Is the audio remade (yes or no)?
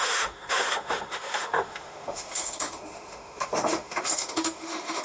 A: yes